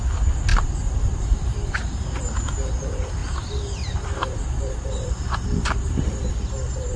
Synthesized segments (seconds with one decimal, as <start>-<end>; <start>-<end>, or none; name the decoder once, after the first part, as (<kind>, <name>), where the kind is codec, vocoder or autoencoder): 0.5-2.2 (vocoder, BigVGAN v2); 3.2-6.3